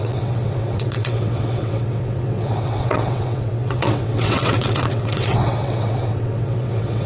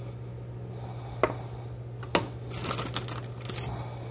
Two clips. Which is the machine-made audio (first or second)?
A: first